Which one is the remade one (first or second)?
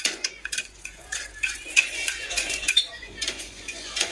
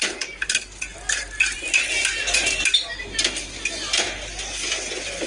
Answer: first